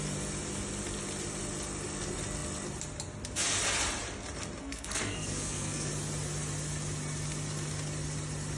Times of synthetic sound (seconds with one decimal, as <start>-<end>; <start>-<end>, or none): 4.6-5.9

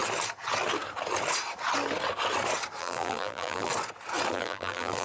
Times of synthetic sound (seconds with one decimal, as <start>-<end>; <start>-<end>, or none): 2.8-3.7; 4.3-5.0

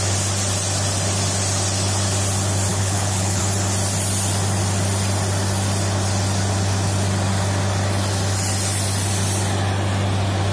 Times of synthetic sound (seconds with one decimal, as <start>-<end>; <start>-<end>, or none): 2.7-3.4

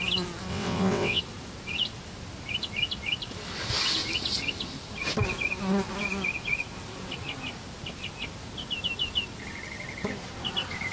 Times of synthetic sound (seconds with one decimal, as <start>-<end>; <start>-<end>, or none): 0.5-1.2

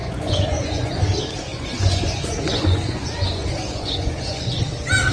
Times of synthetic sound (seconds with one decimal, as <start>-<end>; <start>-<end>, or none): 0.0-1.0; 1.5-4.6